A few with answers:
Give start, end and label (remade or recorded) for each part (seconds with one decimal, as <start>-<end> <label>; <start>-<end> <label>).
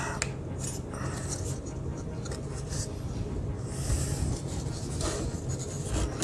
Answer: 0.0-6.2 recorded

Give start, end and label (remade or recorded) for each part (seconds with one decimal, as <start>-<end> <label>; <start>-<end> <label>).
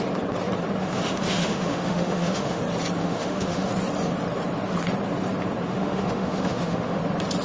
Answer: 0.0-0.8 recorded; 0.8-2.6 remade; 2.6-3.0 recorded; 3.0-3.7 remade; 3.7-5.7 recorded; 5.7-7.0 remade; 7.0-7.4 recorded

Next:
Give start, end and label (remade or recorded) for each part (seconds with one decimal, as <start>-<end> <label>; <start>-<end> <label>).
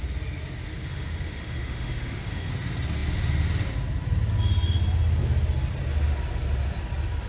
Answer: 0.0-0.8 recorded; 0.8-2.5 remade; 2.5-7.3 recorded